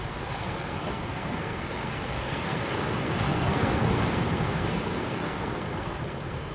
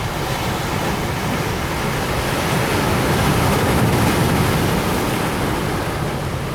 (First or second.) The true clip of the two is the second